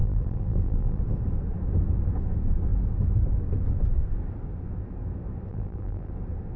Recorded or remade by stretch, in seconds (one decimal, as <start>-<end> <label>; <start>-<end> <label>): 0.0-1.0 remade; 1.0-5.5 recorded; 5.5-6.1 remade; 6.1-6.6 recorded